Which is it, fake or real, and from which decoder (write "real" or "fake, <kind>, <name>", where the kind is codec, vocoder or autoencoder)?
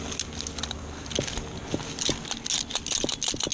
real